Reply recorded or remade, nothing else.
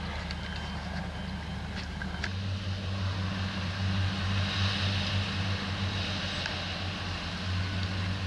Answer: recorded